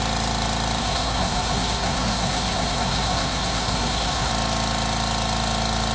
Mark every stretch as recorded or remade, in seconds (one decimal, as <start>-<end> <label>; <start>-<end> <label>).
0.0-0.8 recorded; 0.8-4.3 remade; 4.3-5.9 recorded